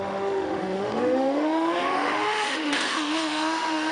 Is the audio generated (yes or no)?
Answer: yes